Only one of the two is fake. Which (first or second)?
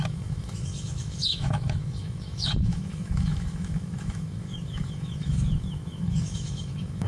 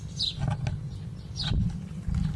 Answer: first